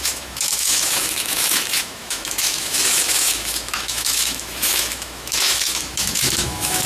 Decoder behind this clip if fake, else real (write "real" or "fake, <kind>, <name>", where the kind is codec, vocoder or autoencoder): fake, autoencoder, DAC-VAE